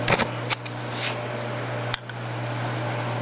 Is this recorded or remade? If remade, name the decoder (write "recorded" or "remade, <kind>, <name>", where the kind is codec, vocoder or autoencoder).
remade, vocoder, BigVGAN v2